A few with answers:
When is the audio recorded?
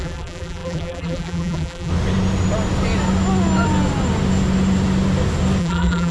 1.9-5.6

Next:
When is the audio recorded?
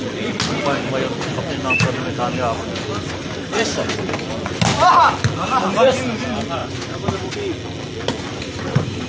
0.0-2.9; 4.0-6.6; 7.3-8.3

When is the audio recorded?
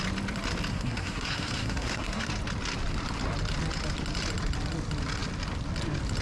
0.0-0.7; 2.3-6.2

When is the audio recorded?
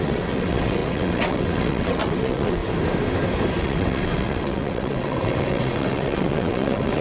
2.6-3.6